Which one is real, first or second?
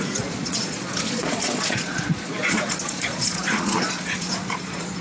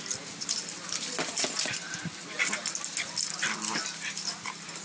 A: second